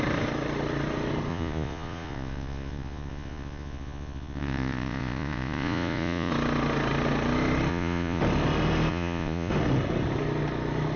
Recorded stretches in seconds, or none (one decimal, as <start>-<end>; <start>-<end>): 0.0-1.3; 6.3-7.7; 8.2-8.9; 9.5-11.0